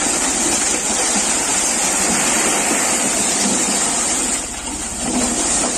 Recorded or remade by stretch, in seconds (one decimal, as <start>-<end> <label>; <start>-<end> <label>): 0.0-5.8 recorded